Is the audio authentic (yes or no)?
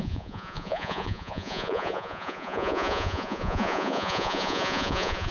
no